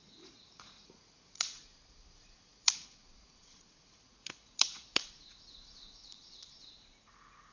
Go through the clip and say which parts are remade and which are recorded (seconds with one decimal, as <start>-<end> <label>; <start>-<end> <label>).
0.0-7.5 remade